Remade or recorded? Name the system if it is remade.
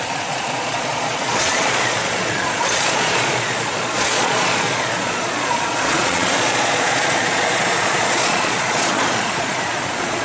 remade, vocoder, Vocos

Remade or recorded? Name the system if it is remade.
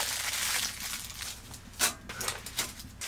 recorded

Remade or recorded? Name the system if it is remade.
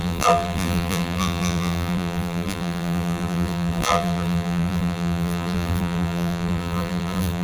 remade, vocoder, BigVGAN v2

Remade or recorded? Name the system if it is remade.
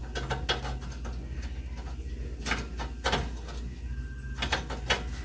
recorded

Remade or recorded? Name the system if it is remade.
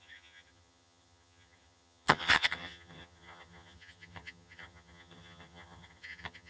remade, vocoder, HiFi-GAN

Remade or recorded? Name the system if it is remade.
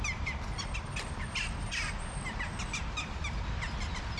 recorded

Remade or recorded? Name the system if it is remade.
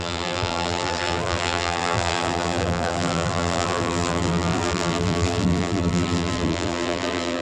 remade, vocoder, BigVGAN v2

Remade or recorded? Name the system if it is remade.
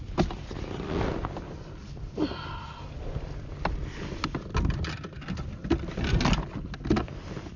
recorded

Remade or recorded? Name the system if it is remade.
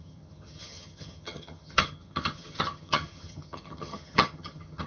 remade, vocoder, HiFi-GAN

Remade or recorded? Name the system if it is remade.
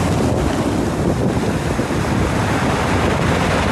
recorded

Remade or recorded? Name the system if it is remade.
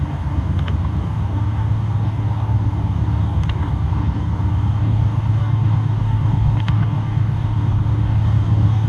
remade, codec, DAC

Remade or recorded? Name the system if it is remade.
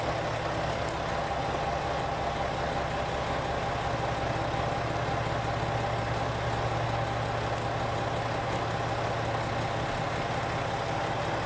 recorded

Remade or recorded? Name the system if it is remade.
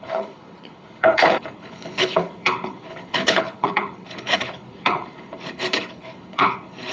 remade, codec, HILCodec